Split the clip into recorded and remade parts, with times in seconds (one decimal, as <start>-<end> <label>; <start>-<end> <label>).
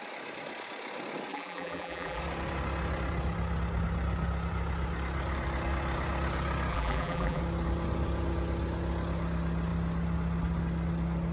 0.0-1.3 recorded; 1.3-2.2 remade; 2.2-6.7 recorded; 6.7-7.4 remade; 7.4-11.3 recorded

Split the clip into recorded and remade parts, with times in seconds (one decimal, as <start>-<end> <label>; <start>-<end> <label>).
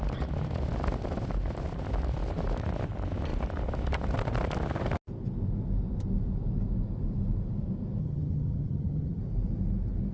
0.0-8.0 recorded; 8.0-9.2 remade; 9.2-10.1 recorded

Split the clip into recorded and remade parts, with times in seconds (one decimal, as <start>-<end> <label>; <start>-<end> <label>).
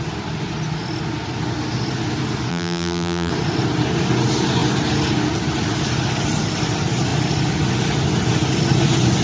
0.0-2.5 recorded; 2.5-3.3 remade; 3.3-9.2 recorded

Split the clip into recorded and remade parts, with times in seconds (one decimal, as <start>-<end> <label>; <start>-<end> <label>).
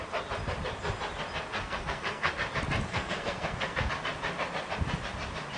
0.0-1.6 recorded; 1.6-2.3 remade; 2.3-2.9 recorded; 2.9-3.9 remade; 3.9-5.6 recorded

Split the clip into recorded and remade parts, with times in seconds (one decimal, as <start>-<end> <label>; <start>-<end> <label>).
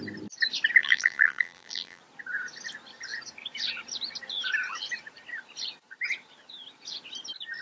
0.0-0.8 recorded; 0.8-2.0 remade; 2.0-7.6 recorded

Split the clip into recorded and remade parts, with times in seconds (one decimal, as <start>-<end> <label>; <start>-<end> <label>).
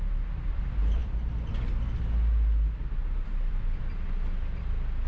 0.0-1.0 recorded; 1.0-2.0 remade; 2.0-3.0 recorded; 3.0-3.8 remade; 3.8-5.1 recorded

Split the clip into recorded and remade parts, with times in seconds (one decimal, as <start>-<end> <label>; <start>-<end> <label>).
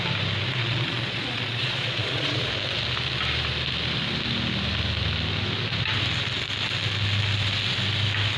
0.0-0.6 recorded; 0.6-2.5 remade; 2.5-8.4 recorded